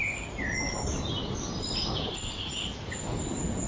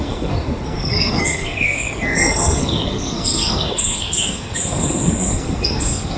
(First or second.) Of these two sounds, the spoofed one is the second